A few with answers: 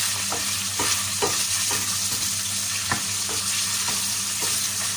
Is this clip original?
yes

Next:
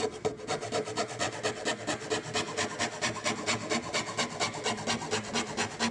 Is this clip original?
yes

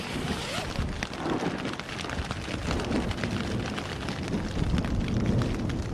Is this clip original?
yes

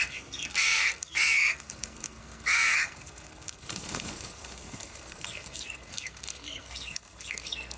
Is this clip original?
no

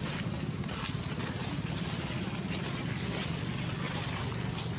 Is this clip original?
yes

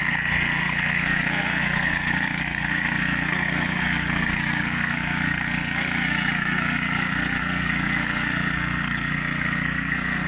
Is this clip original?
no